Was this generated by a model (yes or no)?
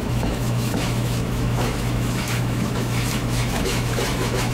yes